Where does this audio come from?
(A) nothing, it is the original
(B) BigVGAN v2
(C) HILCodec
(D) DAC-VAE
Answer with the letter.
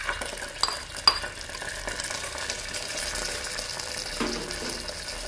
A